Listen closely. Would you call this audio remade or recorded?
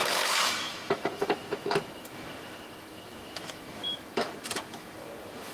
remade